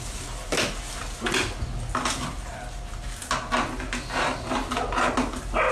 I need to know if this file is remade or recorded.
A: recorded